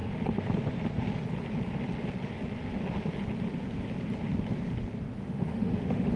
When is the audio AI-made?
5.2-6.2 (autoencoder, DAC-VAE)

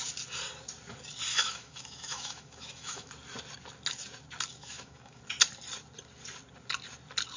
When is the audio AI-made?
1.3-3.1 (autoencoder, DAC-VAE); 4.5-5.2

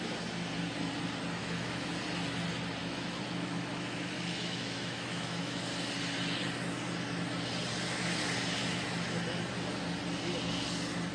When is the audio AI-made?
1.4-1.9 (autoencoder, DAC-VAE); 2.8-5.6

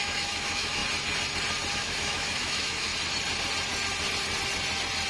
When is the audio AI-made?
0.0-0.8 (autoencoder, DAC-VAE); 1.7-2.9

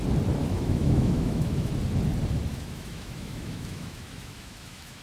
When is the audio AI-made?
0.4-1.7 (autoencoder, DAC-VAE); 2.5-5.0

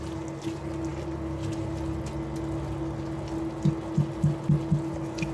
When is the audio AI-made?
none